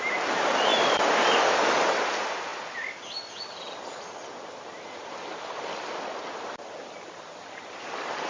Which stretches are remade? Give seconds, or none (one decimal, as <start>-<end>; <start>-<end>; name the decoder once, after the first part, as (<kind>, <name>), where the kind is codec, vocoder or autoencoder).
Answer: none